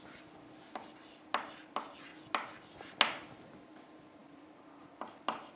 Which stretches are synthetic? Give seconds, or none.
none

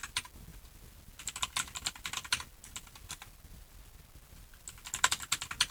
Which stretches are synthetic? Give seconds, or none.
none

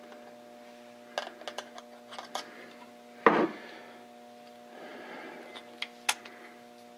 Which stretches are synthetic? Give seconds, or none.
none

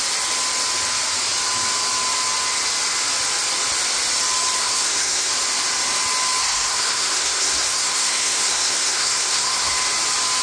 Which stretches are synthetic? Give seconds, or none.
4.6-5.3; 6.4-9.7

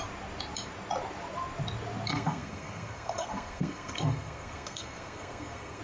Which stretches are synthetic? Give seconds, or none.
2.1-5.8

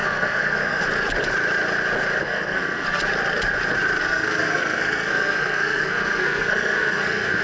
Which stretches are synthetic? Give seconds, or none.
0.0-0.8; 2.2-3.0; 4.0-7.4

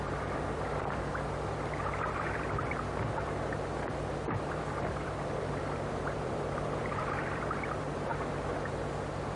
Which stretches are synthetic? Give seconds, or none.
0.0-8.1

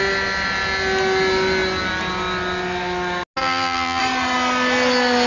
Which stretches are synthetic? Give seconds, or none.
3.4-4.0